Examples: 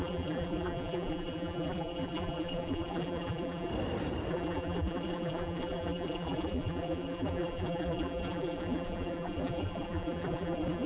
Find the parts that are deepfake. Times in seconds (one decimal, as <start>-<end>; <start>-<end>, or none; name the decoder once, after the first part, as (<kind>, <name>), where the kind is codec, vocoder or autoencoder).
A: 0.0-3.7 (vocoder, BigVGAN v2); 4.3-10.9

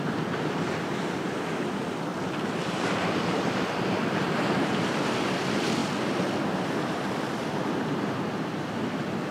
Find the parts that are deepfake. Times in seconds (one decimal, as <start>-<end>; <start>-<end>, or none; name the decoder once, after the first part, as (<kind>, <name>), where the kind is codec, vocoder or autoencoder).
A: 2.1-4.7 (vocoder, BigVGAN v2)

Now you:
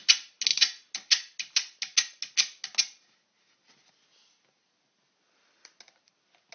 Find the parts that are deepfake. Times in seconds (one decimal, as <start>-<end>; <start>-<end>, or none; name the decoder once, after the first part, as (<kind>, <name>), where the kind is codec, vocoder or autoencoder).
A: none

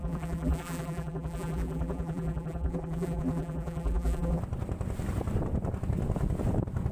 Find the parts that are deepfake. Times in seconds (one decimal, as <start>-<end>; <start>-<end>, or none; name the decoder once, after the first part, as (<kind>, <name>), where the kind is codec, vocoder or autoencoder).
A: 0.0-4.4 (vocoder, BigVGAN v2)